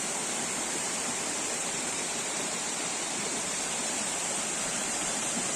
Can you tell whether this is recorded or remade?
remade